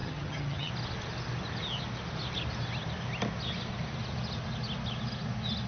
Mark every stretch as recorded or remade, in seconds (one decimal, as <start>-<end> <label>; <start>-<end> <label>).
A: 0.0-0.7 remade; 0.7-5.7 recorded